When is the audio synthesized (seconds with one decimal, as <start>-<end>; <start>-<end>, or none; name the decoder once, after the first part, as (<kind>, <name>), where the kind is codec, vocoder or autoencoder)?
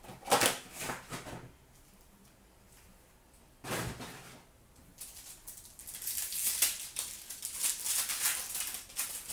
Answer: none